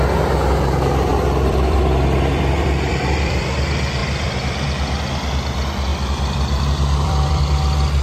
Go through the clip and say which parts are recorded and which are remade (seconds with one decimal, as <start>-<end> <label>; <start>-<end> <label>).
0.0-1.1 recorded; 1.1-3.4 remade; 3.4-4.0 recorded; 4.0-5.0 remade; 5.0-5.9 recorded; 5.9-7.4 remade; 7.4-8.0 recorded